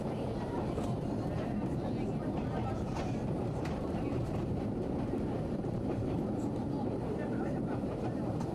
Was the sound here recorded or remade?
remade